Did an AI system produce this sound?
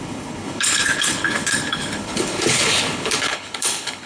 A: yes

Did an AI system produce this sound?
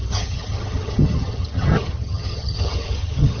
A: yes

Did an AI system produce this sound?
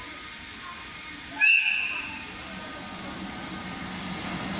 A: no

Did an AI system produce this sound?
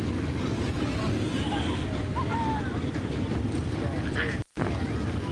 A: no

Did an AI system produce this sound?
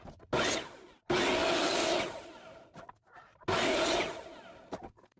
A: no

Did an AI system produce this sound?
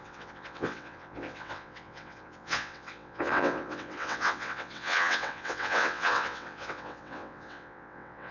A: yes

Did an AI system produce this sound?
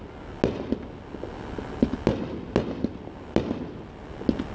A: no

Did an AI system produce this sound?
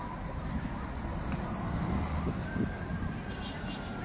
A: no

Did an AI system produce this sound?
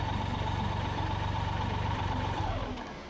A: no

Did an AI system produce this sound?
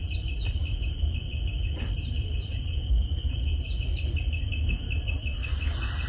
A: no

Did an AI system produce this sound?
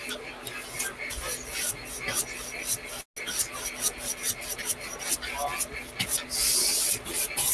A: no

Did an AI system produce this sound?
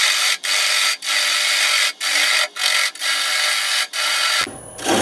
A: no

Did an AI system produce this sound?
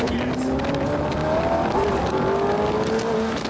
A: no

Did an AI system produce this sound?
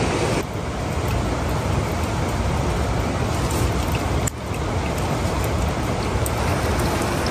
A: no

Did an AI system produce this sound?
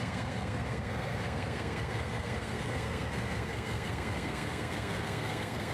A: yes